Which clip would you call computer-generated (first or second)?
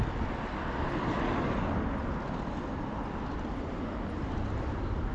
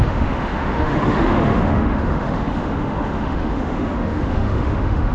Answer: second